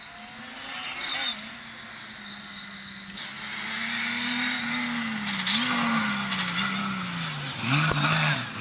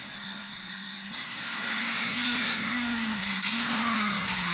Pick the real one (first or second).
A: first